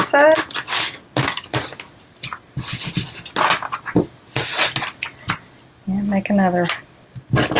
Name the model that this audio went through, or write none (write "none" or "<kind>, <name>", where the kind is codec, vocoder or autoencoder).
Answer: none